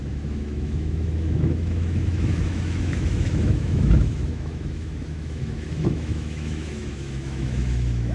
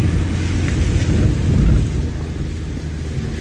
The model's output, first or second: first